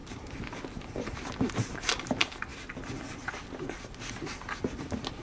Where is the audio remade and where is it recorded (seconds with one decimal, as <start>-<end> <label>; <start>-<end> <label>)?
0.0-5.2 recorded